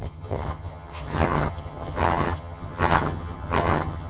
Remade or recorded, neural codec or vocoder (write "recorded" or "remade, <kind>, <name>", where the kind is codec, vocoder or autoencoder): remade, vocoder, HiFi-GAN